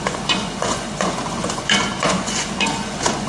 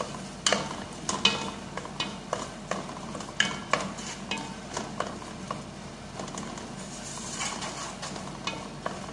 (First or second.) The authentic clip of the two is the second